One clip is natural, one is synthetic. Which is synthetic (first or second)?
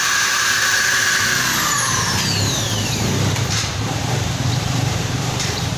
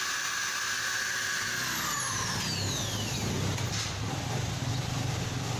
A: first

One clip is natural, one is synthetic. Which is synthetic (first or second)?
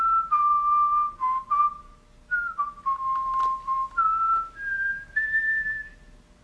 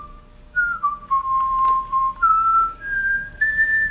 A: second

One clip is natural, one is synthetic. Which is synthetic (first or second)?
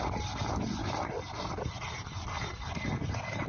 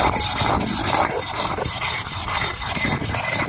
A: second